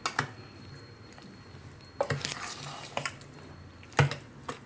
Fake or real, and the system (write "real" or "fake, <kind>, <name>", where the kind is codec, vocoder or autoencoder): real